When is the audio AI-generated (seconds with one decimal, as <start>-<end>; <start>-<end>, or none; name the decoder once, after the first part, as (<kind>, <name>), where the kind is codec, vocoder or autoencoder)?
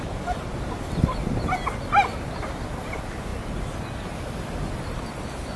none